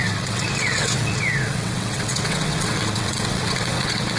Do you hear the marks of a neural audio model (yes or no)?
yes